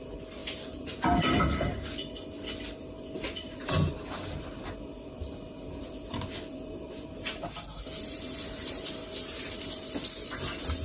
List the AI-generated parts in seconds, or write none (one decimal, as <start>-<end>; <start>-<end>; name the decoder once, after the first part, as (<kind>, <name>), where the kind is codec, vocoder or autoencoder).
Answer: 0.0-0.4 (vocoder, BigVGAN v2); 2.8-10.8